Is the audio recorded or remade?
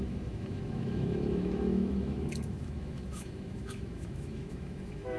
remade